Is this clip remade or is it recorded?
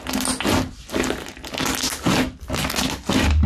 recorded